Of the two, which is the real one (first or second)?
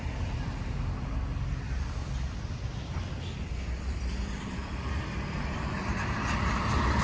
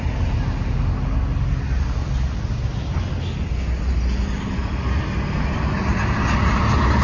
second